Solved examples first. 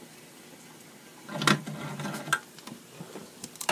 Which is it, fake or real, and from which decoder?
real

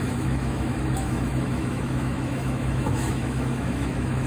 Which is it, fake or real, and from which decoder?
fake, autoencoder, DAC-VAE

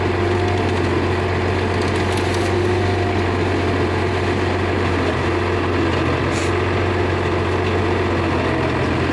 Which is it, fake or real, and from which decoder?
real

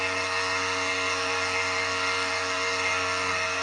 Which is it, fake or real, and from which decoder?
fake, codec, SNAC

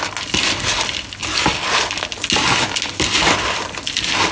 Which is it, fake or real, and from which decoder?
real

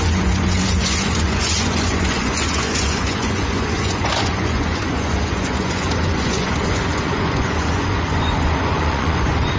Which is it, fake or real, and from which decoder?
fake, vocoder, Vocos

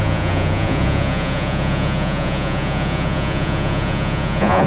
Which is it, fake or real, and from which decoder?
fake, vocoder, Vocos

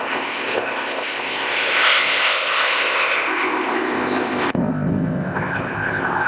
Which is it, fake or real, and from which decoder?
fake, codec, ZipCodec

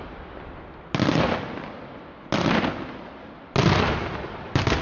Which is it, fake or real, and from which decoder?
real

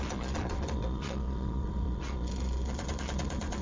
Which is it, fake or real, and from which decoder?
fake, vocoder, Vocos